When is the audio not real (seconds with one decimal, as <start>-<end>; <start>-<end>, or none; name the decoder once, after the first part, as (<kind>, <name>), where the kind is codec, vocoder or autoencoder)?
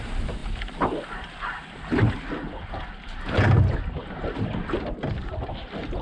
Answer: none